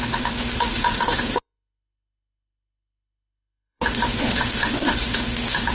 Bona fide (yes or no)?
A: no